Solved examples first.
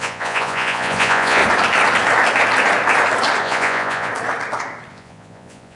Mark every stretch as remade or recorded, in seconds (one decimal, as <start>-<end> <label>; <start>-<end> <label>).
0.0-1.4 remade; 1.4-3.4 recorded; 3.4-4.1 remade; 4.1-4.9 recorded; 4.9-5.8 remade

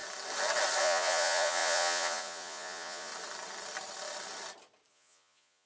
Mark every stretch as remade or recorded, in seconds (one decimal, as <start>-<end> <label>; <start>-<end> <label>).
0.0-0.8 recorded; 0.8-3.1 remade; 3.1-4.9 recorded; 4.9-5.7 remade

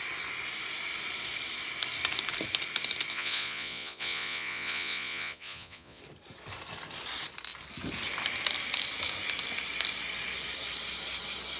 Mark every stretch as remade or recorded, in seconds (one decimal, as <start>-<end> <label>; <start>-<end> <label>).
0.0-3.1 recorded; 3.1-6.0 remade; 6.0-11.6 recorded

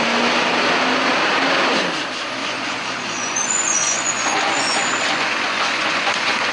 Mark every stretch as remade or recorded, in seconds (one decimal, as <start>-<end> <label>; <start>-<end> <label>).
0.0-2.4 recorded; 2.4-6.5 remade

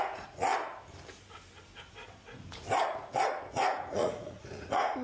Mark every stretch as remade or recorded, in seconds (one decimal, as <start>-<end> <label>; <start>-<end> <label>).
0.0-0.5 remade; 0.5-3.5 recorded; 3.5-5.0 remade

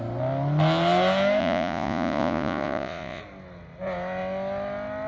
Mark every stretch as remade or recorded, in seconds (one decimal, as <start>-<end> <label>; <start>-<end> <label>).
0.0-1.4 recorded; 1.4-3.2 remade; 3.2-5.1 recorded